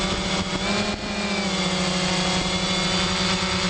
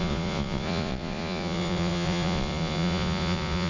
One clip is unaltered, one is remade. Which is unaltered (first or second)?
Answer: first